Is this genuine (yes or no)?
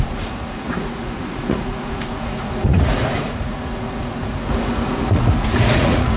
no